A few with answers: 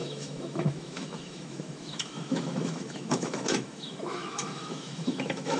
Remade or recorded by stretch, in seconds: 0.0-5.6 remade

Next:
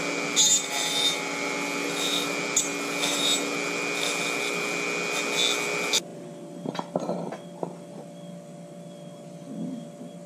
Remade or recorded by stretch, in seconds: 0.0-10.3 recorded

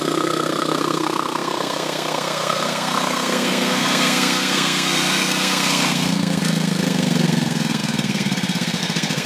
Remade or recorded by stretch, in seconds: 0.0-9.3 remade

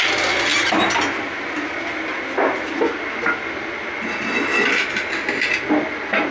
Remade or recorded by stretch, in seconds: 0.0-6.3 recorded

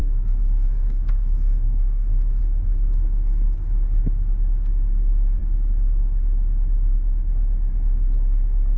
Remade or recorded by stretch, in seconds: 0.0-2.4 remade; 2.4-8.8 recorded

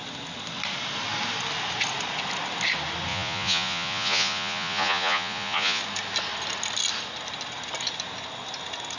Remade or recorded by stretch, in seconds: 0.0-3.1 recorded; 3.1-5.8 remade; 5.8-9.0 recorded